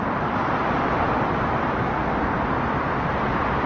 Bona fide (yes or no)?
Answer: yes